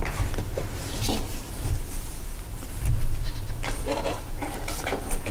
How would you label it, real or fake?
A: fake